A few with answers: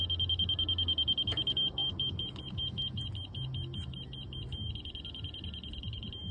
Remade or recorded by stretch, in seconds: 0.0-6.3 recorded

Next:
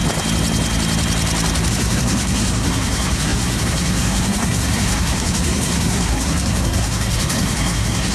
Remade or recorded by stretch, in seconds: 0.0-1.7 recorded; 1.7-8.1 remade

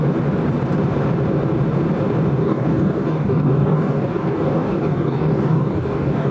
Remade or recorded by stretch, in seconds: 0.0-2.4 recorded; 2.4-6.3 remade

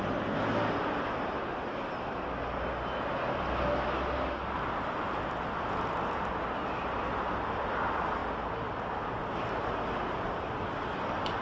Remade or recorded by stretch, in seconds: 0.0-11.4 recorded

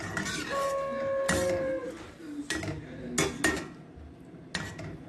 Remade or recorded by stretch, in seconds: 0.0-5.1 recorded

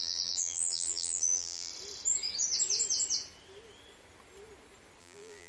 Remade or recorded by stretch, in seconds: 0.0-1.7 remade; 1.7-5.0 recorded; 5.0-5.5 remade

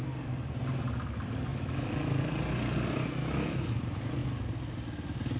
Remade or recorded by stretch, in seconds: 0.0-1.5 recorded; 1.5-2.2 remade; 2.2-3.2 recorded; 3.2-3.8 remade; 3.8-5.4 recorded